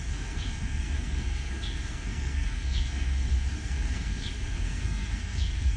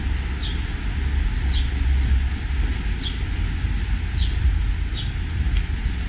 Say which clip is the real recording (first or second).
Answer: second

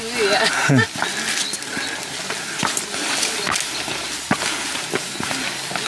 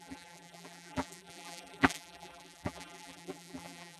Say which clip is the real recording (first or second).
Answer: first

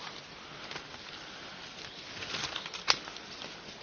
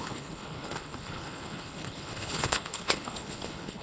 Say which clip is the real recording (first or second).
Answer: first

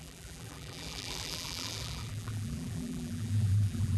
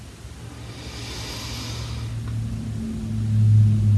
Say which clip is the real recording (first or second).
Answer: second